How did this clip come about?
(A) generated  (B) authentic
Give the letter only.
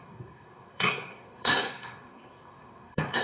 A